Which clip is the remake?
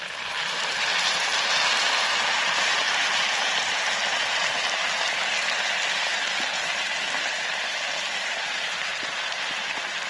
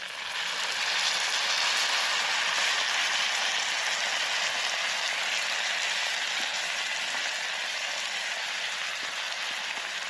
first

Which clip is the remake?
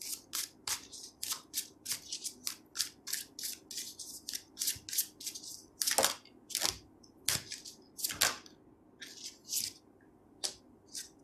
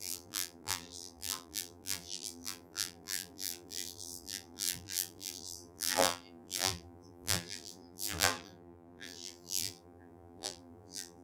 second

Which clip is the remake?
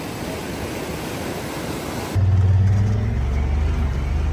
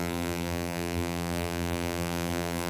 second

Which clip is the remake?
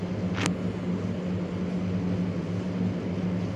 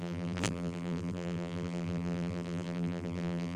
second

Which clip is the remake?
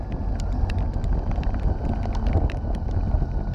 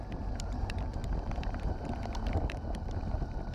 second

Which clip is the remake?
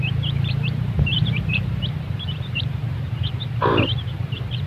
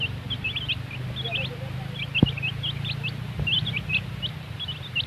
first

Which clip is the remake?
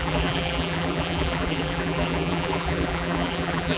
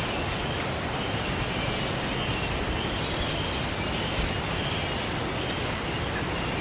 first